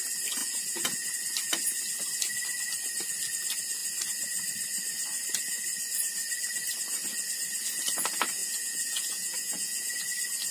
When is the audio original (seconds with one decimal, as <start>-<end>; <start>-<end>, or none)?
0.0-0.4; 1.1-8.4; 10.0-10.5